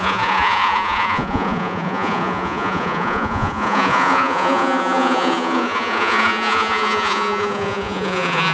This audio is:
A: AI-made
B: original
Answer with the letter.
A